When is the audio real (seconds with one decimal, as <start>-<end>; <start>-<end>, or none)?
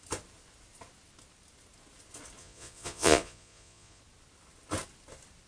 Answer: 0.0-2.4; 4.0-5.5